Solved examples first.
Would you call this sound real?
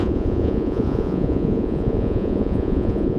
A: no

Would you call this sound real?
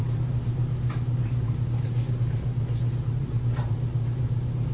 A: no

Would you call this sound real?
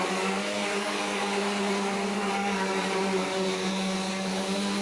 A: no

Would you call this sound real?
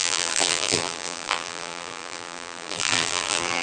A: no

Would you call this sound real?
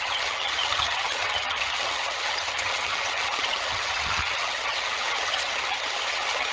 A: no